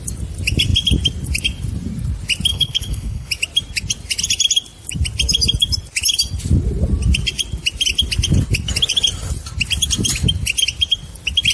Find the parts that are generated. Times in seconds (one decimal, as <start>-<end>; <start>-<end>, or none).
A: 2.5-3.3